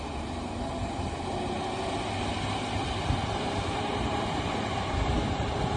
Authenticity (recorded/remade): remade